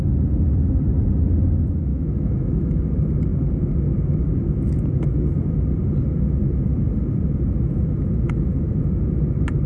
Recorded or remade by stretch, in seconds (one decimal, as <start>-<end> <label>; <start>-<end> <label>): 0.0-1.9 recorded; 1.9-2.8 remade; 2.8-9.7 recorded